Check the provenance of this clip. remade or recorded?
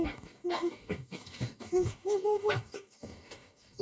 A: remade